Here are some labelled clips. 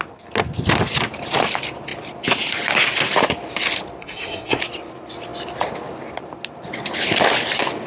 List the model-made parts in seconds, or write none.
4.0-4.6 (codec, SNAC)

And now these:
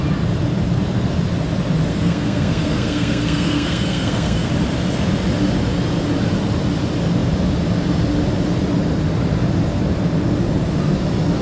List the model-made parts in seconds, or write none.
1.9-4.5 (codec, SNAC)

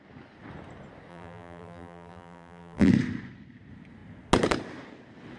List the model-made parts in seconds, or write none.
1.1-2.9 (vocoder, BigVGAN v2)

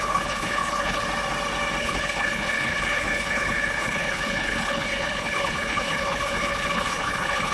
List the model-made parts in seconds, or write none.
0.0-1.0 (codec, HILCodec); 1.8-7.5

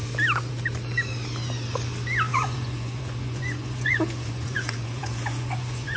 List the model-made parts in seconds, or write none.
2.3-6.0 (vocoder, Vocos)

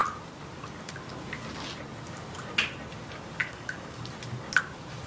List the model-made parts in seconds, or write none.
3.4-4.0 (codec, DAC)

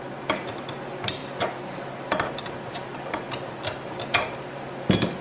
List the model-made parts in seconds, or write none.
0.0-5.2 (vocoder, BigVGAN v2)

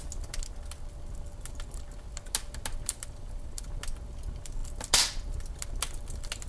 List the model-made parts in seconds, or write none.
none